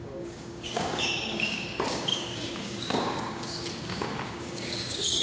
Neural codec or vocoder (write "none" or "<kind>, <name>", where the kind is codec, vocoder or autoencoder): codec, DAC